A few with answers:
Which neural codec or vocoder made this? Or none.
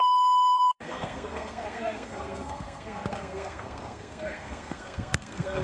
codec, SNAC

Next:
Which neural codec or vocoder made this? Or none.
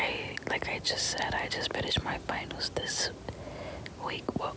none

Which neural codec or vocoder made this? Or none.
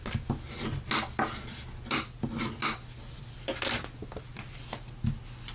none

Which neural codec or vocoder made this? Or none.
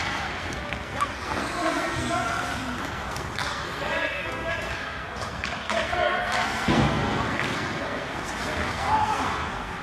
codec, SNAC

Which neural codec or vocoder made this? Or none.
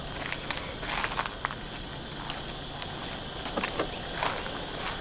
none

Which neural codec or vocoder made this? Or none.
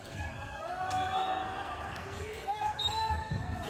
codec, SNAC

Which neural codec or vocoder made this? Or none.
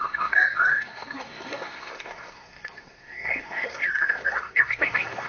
codec, SNAC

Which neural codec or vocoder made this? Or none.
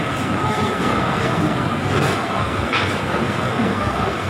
codec, SNAC